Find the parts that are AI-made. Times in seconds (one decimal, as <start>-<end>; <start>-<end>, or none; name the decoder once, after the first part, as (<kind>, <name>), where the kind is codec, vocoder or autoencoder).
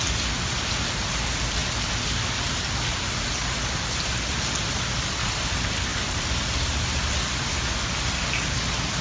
5.9-7.6 (vocoder, BigVGAN v2)